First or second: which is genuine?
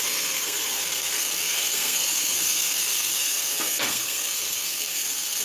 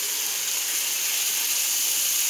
second